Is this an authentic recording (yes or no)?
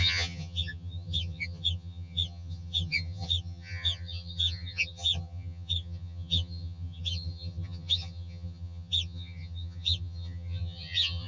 no